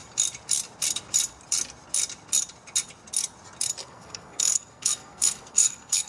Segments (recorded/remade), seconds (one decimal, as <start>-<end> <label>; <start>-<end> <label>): 0.0-3.8 recorded; 3.8-6.1 remade